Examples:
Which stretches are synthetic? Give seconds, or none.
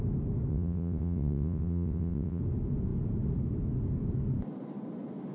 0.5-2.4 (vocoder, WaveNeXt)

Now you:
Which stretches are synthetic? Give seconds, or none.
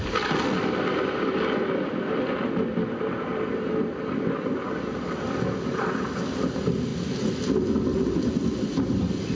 none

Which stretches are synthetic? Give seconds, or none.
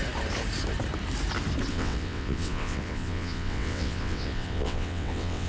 1.7-5.5 (vocoder, WaveNeXt)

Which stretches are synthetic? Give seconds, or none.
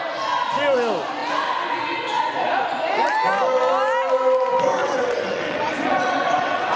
4.8-6.8 (vocoder, WaveNeXt)